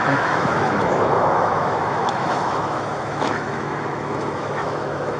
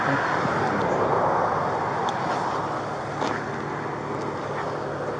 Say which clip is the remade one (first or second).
first